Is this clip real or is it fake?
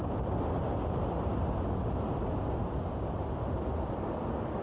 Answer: real